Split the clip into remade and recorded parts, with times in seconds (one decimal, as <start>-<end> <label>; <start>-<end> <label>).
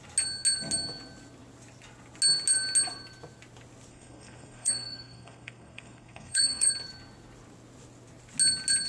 0.0-3.9 recorded; 3.9-6.7 remade; 6.7-8.9 recorded